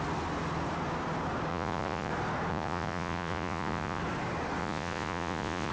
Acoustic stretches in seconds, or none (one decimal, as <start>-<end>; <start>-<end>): 0.0-1.5; 2.1-2.5; 4.0-4.6